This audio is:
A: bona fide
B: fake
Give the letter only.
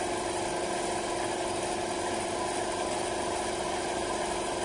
A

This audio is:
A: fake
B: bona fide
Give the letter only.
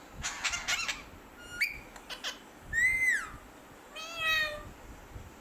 B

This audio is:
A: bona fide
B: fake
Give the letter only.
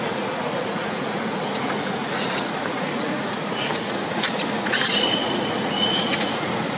B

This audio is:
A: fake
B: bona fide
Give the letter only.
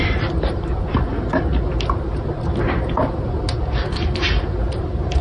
B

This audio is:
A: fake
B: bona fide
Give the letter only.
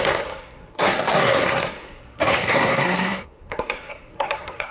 A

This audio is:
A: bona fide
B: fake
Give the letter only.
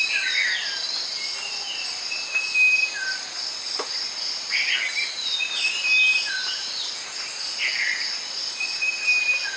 A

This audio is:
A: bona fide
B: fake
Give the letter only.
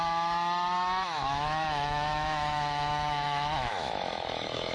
B